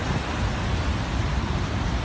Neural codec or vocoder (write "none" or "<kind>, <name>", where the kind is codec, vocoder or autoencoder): none